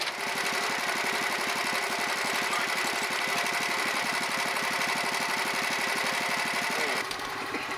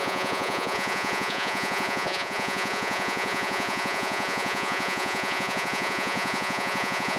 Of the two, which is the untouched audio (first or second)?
first